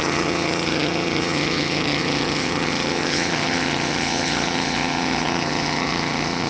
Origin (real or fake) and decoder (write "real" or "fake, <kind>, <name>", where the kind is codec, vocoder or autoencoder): fake, vocoder, HiFi-GAN